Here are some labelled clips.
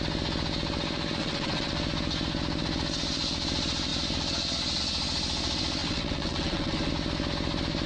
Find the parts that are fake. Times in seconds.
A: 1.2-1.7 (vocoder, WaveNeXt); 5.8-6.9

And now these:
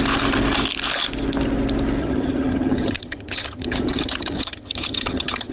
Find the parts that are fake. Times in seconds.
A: 2.0-5.5 (vocoder, HiFi-GAN)

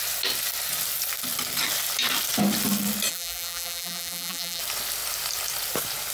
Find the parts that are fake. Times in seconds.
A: 3.1-4.6 (vocoder, BigVGAN v2)

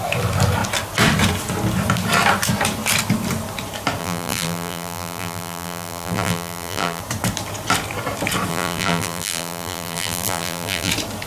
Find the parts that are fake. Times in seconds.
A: 4.0-7.0 (vocoder, BigVGAN v2); 8.5-10.9

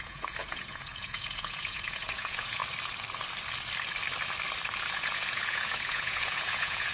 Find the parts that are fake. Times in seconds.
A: 0.0-2.6 (vocoder, Vocos); 4.9-6.9